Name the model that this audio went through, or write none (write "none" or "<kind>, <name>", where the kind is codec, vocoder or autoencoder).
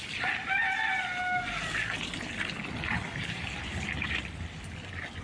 none